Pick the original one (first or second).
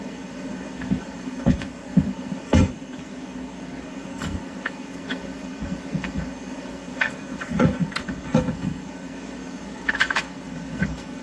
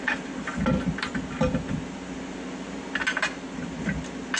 second